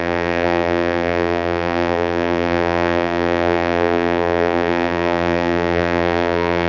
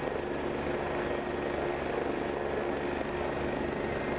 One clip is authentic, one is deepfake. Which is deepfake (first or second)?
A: first